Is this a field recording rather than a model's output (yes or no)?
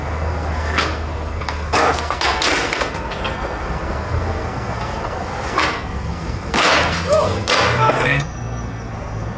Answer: no